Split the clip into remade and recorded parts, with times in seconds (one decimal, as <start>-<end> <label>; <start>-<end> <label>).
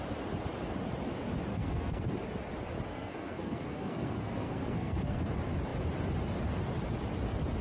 0.0-1.5 recorded; 1.5-2.1 remade; 2.1-2.9 recorded; 2.9-5.2 remade; 5.2-7.6 recorded